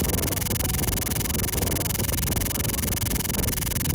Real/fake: real